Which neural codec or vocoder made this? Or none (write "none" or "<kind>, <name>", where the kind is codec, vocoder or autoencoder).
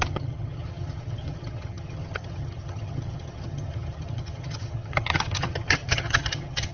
vocoder, HiFi-GAN